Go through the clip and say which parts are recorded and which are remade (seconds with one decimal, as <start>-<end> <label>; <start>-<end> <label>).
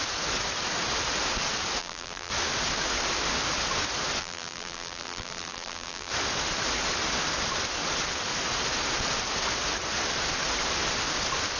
0.0-1.8 recorded; 1.8-2.3 remade; 2.3-4.2 recorded; 4.2-6.1 remade; 6.1-11.6 recorded